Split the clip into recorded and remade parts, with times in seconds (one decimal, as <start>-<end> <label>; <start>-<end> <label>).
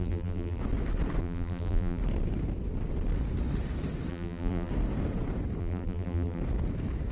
0.0-0.6 remade; 0.6-1.2 recorded; 1.2-2.0 remade; 2.0-4.1 recorded; 4.1-4.7 remade; 4.7-5.6 recorded; 5.6-6.4 remade; 6.4-7.1 recorded